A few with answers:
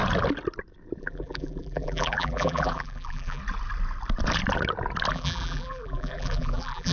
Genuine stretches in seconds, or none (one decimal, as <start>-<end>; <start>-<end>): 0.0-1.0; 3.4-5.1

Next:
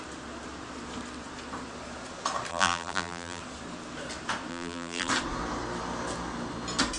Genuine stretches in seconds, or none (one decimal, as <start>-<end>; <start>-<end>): 0.0-2.5; 3.4-4.5; 5.1-7.0

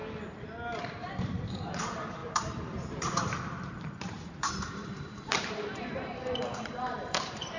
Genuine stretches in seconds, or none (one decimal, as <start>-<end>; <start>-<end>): 0.0-1.1

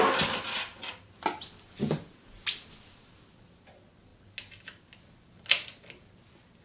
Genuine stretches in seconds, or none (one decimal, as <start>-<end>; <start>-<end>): 0.0-0.7; 2.1-6.6

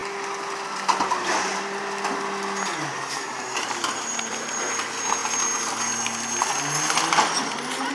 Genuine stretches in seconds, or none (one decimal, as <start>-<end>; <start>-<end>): 0.0-2.9; 4.7-7.9

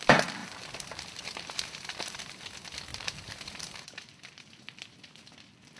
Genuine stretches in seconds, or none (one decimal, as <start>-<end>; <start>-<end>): 0.0-0.4; 2.4-2.9; 4.1-5.8

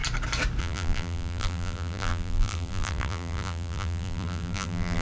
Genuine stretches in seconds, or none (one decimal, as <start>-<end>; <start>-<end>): 0.0-0.6